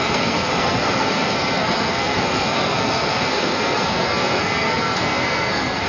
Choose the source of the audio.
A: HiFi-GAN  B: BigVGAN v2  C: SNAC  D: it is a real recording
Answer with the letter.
C